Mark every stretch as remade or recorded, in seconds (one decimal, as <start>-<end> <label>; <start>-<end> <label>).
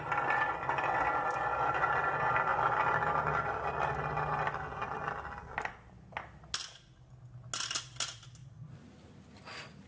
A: 0.0-9.9 recorded